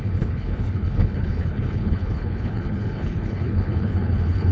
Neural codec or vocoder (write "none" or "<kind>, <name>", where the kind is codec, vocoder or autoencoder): codec, HILCodec